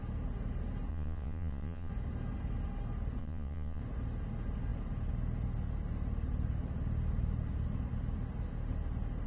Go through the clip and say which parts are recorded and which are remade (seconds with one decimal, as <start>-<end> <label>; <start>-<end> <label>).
0.0-0.9 recorded; 0.9-1.9 remade; 1.9-3.2 recorded; 3.2-3.8 remade; 3.8-9.3 recorded

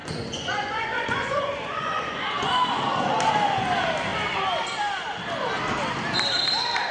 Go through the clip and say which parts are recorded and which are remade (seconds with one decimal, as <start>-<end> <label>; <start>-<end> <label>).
0.0-2.7 remade; 2.7-6.9 recorded